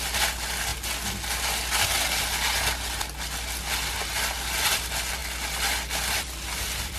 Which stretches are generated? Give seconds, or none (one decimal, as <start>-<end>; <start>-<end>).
0.0-0.7; 3.9-7.0